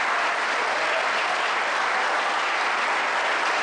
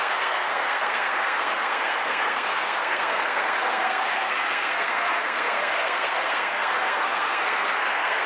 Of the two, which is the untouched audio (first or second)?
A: first